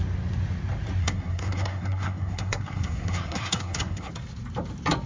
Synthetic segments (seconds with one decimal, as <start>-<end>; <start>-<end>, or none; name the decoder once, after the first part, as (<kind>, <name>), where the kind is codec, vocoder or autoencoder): 1.0-4.1 (codec, SNAC)